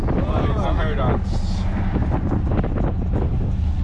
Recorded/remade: recorded